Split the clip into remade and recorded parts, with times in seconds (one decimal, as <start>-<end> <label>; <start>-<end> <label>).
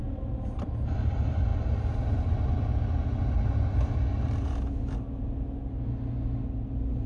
0.0-7.1 recorded